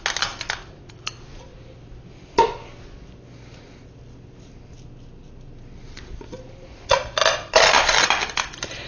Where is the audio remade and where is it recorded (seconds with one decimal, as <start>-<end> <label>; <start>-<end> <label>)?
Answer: 0.0-8.9 recorded